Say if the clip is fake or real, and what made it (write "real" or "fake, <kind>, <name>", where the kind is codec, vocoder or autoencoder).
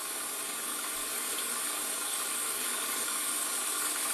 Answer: fake, codec, DAC